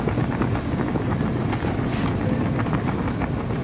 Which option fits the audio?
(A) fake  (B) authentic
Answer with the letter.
B